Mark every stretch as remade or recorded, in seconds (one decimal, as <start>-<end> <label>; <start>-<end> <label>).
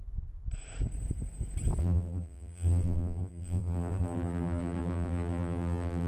0.0-1.8 recorded; 1.8-6.1 remade